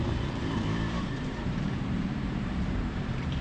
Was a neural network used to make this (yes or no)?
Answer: yes